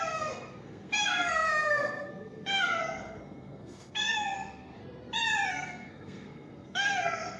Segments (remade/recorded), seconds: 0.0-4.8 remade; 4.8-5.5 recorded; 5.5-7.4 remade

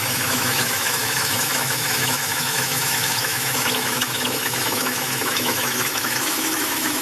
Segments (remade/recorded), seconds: 0.0-7.0 remade